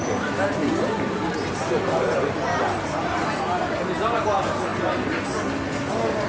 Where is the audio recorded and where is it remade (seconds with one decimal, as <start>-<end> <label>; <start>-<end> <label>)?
0.0-6.3 recorded